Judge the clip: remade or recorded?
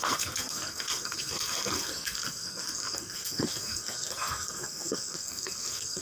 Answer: remade